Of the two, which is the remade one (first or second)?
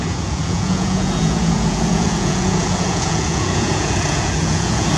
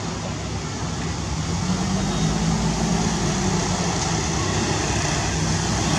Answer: first